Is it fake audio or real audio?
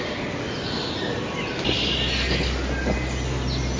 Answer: real